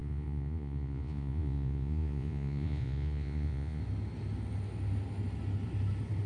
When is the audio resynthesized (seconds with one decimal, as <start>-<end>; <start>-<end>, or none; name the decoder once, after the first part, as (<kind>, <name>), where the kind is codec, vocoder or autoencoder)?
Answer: 0.0-3.8 (vocoder, Vocos)